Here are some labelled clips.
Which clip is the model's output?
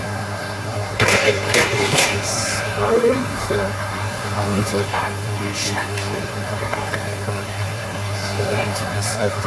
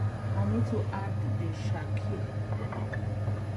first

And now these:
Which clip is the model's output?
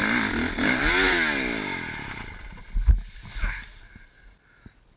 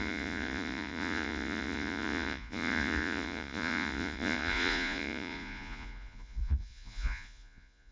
second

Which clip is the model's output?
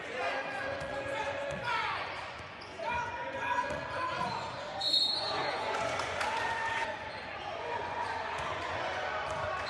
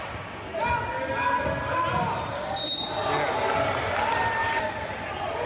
first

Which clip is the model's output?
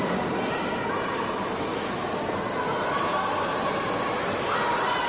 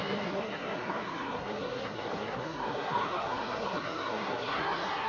second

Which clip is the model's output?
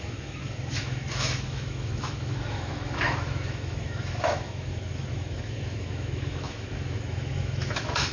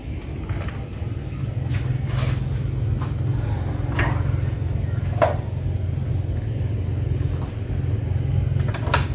first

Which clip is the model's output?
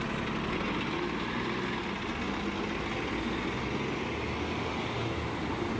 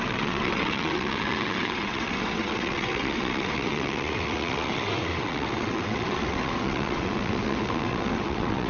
second